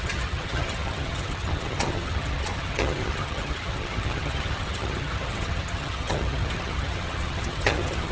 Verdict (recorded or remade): remade